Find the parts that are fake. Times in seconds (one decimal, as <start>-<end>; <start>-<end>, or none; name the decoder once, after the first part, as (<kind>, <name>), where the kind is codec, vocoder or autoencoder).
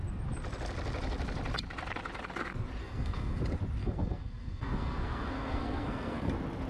2.8-3.4 (codec, SNAC); 3.8-6.3